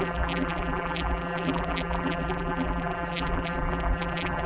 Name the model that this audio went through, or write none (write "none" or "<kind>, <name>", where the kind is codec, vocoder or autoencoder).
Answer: vocoder, BigVGAN v2